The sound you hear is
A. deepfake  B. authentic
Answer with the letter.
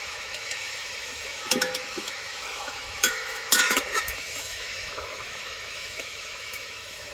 A